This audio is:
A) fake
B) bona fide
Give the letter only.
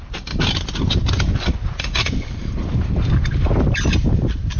B